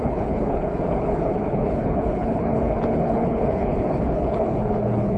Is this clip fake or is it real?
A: fake